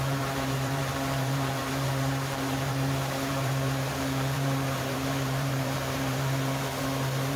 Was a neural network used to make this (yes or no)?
yes